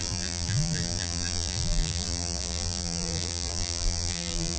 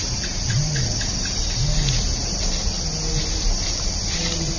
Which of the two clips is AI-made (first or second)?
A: first